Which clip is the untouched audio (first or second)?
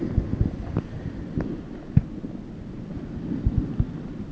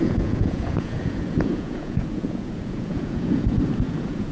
first